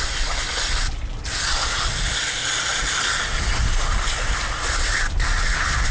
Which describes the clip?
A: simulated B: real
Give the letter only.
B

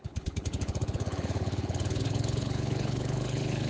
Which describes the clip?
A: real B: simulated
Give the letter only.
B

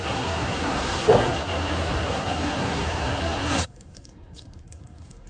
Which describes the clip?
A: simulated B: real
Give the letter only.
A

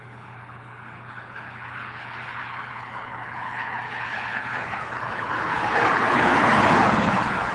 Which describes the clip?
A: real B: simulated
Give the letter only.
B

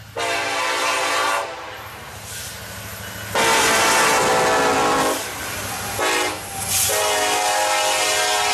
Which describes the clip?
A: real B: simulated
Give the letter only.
A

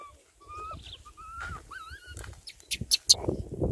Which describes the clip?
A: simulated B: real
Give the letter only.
B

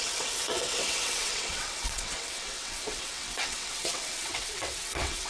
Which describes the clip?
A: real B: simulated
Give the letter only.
B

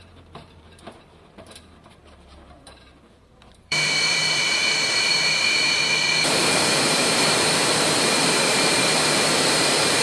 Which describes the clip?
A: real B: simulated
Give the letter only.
B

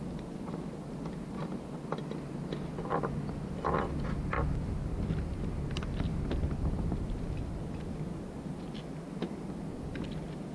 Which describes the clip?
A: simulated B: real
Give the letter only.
B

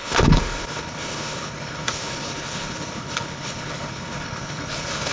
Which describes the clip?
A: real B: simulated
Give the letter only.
B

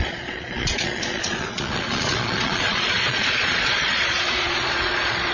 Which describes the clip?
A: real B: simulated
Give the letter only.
B